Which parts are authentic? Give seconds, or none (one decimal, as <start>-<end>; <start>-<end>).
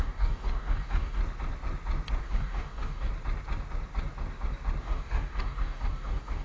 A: 1.2-2.2; 3.1-4.8